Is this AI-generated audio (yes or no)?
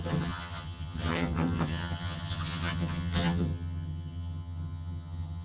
yes